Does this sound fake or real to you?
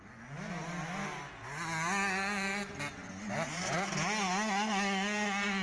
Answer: real